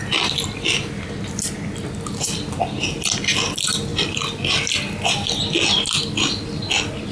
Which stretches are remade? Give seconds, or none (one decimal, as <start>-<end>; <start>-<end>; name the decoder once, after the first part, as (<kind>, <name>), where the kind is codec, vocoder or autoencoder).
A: 3.9-4.4 (vocoder, BigVGAN v2)